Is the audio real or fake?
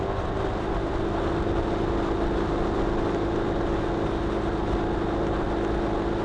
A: real